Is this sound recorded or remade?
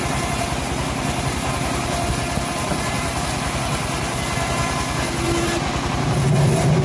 recorded